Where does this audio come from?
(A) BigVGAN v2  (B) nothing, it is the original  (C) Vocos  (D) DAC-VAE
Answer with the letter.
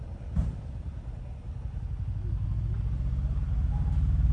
B